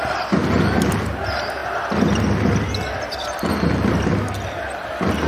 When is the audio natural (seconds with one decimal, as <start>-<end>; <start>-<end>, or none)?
0.0-5.3